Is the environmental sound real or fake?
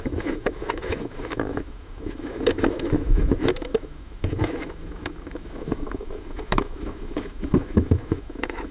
fake